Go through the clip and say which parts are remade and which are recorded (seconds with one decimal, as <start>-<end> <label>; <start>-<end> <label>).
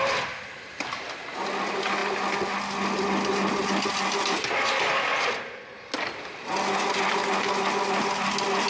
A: 0.0-8.7 recorded